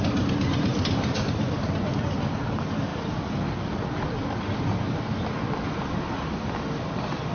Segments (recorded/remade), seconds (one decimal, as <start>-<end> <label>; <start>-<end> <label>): 0.0-0.7 recorded; 0.7-1.5 remade; 1.5-7.3 recorded